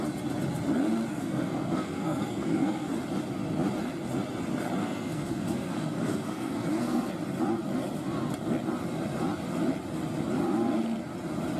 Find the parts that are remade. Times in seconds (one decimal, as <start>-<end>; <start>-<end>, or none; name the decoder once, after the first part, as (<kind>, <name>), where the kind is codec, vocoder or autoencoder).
1.1-2.9 (codec, SNAC); 4.8-7.1